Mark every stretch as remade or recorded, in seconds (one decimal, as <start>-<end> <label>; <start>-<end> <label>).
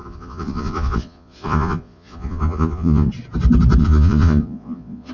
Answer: 0.0-3.1 remade; 3.1-3.8 recorded; 3.8-5.1 remade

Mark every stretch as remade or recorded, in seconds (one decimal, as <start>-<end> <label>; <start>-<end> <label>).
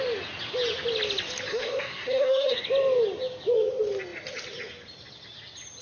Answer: 0.0-1.5 recorded; 1.5-2.6 remade; 2.6-5.8 recorded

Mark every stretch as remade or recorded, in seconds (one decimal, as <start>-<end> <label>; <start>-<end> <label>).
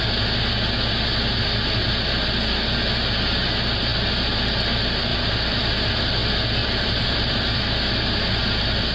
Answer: 0.0-5.1 recorded; 5.1-6.1 remade; 6.1-6.6 recorded; 6.6-7.6 remade; 7.6-8.9 recorded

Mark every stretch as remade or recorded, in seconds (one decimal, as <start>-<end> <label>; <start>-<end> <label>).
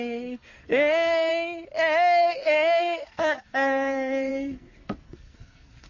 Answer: 0.0-1.3 remade; 1.3-2.3 recorded; 2.3-5.9 remade